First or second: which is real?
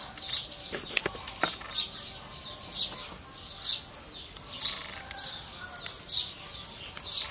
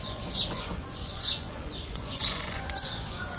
first